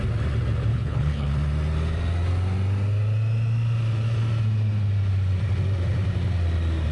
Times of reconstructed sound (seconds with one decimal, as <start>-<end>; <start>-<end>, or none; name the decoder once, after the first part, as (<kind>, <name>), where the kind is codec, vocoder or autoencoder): 0.7-1.3 (codec, HILCodec)